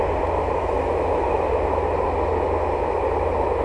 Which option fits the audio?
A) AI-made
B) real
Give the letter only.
B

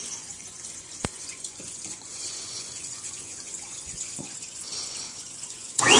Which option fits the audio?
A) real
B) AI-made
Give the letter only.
B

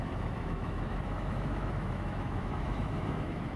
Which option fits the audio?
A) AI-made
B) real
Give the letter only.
A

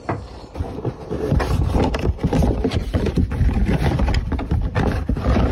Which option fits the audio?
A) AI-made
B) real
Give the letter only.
A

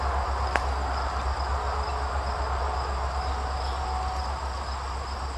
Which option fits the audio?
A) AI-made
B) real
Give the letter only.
B